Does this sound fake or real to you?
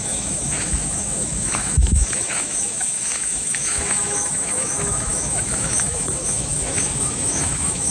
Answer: fake